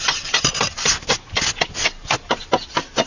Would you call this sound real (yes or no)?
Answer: yes